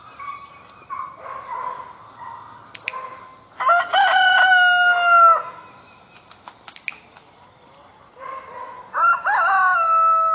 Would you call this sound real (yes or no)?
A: yes